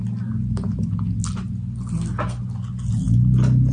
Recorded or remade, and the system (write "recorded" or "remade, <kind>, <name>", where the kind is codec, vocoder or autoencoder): recorded